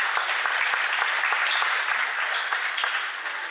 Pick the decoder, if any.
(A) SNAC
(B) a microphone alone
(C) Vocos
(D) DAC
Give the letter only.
B